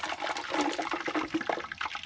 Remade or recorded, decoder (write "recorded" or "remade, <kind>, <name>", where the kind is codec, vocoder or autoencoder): recorded